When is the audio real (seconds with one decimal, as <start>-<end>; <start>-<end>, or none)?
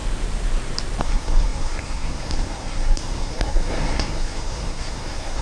0.0-1.0